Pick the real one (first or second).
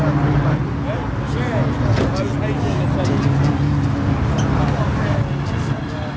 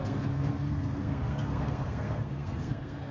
first